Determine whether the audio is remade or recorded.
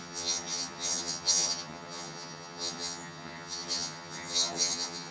remade